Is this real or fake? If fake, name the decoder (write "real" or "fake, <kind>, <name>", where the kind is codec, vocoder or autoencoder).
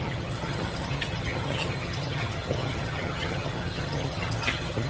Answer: fake, vocoder, HiFi-GAN